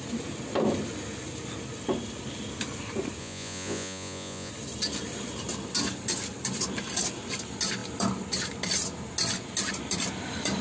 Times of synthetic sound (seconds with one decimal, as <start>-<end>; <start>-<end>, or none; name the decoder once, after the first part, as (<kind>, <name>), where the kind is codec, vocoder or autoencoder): 3.2-4.5 (vocoder, Vocos)